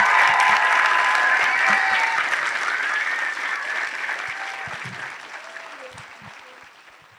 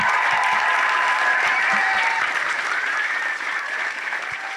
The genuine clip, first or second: first